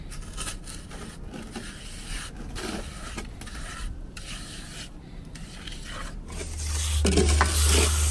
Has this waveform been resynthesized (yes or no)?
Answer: no